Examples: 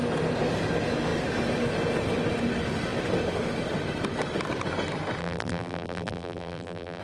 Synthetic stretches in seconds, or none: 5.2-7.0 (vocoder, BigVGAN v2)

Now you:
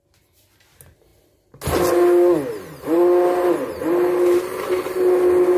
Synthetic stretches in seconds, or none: none

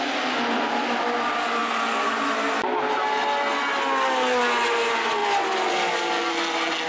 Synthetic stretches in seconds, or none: none

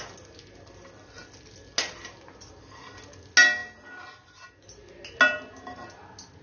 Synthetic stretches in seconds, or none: none

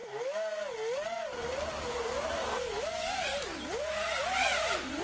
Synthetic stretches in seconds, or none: 1.1-2.4 (vocoder, BigVGAN v2); 4.2-5.0